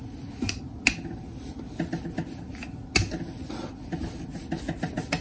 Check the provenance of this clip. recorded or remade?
recorded